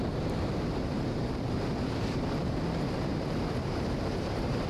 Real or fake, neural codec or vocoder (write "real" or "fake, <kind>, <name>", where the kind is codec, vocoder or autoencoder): fake, vocoder, BigVGAN v2